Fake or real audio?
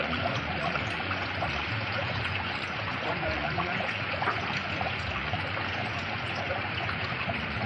fake